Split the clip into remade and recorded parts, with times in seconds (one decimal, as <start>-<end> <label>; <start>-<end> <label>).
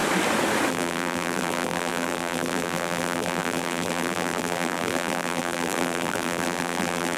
0.0-0.7 recorded; 0.7-7.2 remade